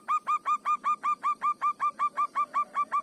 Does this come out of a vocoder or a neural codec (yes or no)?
yes